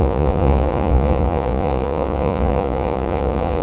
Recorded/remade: remade